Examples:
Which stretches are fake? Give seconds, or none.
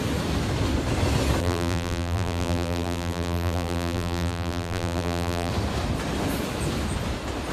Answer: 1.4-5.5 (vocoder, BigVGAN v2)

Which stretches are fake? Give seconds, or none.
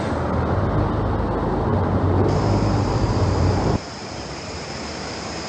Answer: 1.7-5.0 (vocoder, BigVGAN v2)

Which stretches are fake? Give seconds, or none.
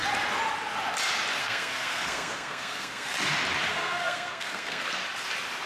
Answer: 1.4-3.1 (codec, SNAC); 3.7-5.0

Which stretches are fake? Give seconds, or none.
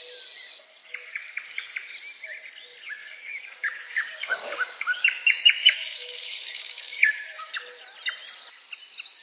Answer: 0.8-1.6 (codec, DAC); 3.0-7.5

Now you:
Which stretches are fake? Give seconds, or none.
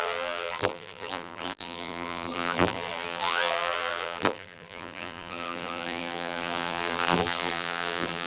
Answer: 0.0-8.3 (vocoder, BigVGAN v2)